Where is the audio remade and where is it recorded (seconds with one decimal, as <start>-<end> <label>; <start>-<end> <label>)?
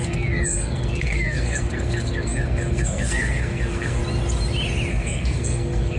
0.0-4.0 remade; 4.0-4.9 recorded; 4.9-6.0 remade